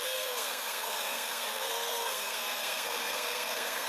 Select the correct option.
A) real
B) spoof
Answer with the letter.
B